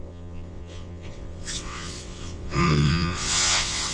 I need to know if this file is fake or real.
fake